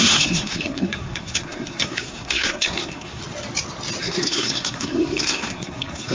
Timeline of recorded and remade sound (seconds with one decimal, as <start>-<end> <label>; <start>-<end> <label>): 0.0-3.2 remade; 3.2-4.0 recorded; 4.0-6.1 remade